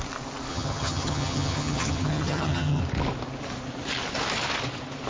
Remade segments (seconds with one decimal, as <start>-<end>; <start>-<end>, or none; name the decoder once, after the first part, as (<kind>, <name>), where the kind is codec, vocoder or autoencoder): 0.5-2.8 (vocoder, HiFi-GAN)